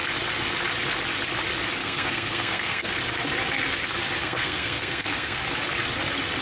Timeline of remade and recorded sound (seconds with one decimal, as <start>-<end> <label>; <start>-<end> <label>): 0.0-1.8 recorded; 1.8-2.9 remade; 2.9-4.2 recorded; 4.2-5.4 remade; 5.4-6.4 recorded